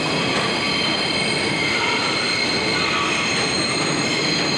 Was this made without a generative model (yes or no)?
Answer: yes